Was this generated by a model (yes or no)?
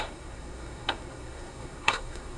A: yes